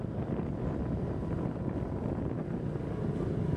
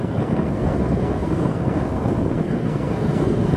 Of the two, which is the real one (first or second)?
first